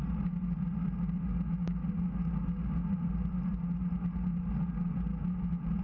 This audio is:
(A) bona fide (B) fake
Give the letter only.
A